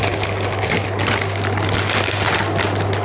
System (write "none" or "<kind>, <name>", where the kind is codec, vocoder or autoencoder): none